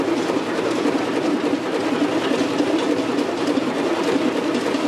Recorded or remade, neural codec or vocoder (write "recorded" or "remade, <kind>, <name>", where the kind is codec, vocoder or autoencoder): recorded